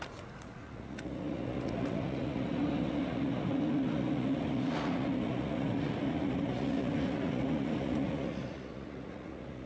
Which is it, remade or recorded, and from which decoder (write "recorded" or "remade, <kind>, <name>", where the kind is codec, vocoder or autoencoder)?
remade, vocoder, Vocos